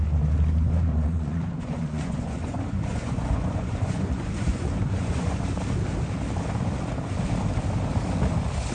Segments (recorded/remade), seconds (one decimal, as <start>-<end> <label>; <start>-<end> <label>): 0.0-0.9 recorded; 0.9-5.4 remade; 5.4-8.7 recorded